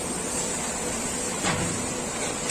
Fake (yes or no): no